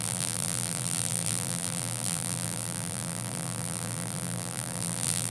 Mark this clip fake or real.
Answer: fake